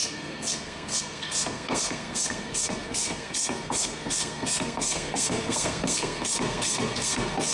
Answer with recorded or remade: remade